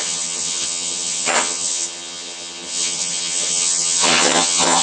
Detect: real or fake fake